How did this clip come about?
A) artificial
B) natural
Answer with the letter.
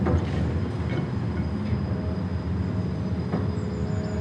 B